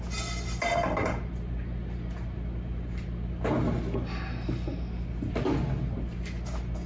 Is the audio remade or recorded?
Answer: recorded